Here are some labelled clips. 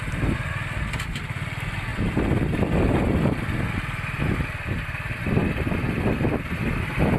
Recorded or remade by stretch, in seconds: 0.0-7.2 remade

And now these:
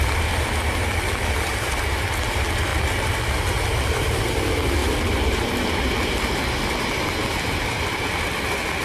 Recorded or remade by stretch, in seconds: 0.0-8.8 recorded